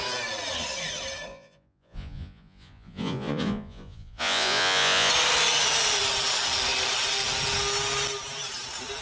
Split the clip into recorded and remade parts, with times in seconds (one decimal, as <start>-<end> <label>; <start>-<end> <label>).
0.0-1.3 recorded; 1.3-5.1 remade; 5.1-9.0 recorded